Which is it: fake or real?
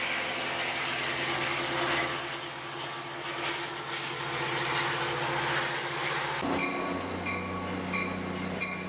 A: real